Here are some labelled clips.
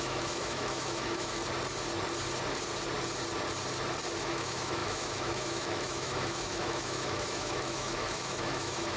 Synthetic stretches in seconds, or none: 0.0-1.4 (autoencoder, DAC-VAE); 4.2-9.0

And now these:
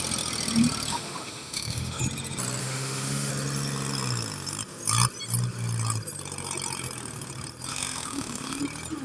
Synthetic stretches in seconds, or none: 0.9-2.0 (autoencoder, DAC-VAE); 2.6-3.3; 7.7-8.6

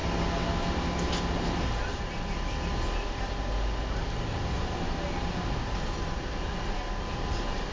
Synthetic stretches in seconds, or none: none

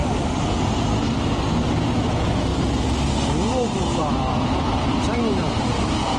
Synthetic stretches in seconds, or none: none

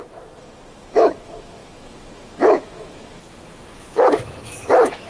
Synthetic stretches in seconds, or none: 0.0-5.1 (autoencoder, DAC-VAE)